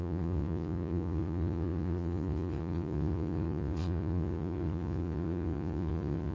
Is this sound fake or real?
fake